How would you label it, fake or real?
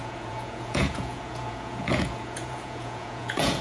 fake